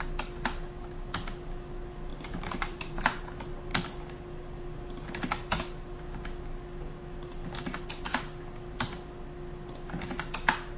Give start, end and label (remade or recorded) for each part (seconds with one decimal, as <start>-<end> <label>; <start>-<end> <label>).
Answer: 0.0-2.1 recorded; 2.1-3.2 remade; 3.2-10.8 recorded